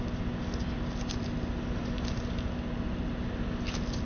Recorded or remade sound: recorded